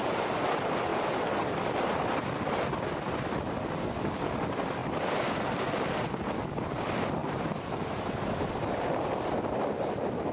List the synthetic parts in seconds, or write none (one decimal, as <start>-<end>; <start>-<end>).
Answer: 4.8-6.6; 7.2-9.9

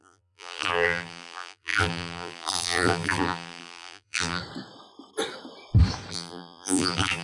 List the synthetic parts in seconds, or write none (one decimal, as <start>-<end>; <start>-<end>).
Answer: 0.0-4.4; 6.1-7.2

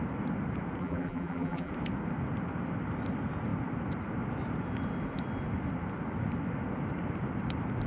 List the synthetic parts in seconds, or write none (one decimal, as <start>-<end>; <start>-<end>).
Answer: 0.8-1.7